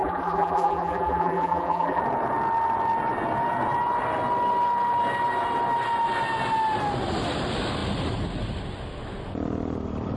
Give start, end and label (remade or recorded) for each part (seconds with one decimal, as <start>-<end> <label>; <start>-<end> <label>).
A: 0.0-2.0 remade; 2.0-10.2 recorded